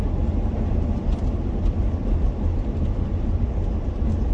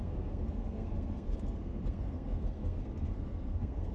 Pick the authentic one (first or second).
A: first